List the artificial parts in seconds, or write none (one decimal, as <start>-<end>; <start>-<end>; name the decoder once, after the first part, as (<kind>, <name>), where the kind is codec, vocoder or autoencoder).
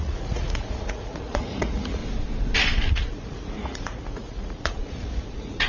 0.0-2.0 (vocoder, Vocos); 2.9-5.7